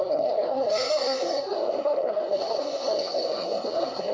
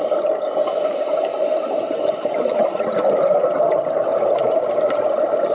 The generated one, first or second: first